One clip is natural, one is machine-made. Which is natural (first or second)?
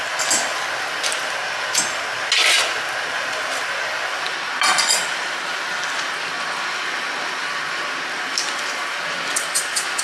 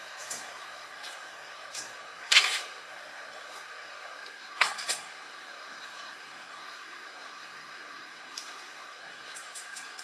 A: first